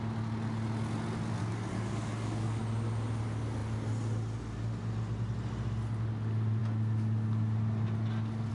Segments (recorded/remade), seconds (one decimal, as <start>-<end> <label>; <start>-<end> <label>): 0.0-1.4 recorded; 1.4-2.6 remade; 2.6-8.5 recorded